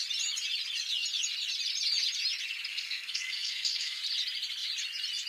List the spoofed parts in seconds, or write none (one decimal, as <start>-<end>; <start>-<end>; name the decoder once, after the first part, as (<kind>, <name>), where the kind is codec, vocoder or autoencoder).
2.7-4.0 (codec, SNAC)